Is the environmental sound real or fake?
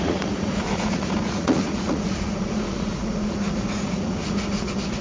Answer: fake